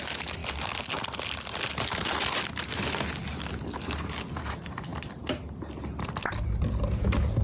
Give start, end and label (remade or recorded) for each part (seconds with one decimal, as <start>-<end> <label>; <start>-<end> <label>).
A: 0.0-7.4 recorded